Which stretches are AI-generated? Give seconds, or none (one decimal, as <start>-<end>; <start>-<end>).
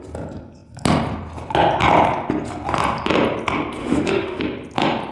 3.8-4.4